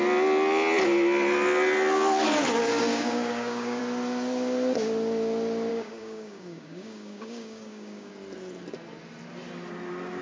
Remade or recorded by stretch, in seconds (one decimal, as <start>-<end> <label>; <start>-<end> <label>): 0.0-2.9 recorded; 2.9-3.8 remade; 3.8-5.7 recorded; 5.7-8.1 remade; 8.1-10.2 recorded